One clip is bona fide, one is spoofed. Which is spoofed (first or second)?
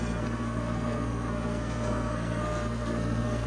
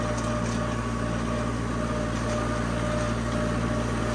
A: first